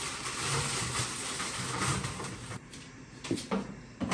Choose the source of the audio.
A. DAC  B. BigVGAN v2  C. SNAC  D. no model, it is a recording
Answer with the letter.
B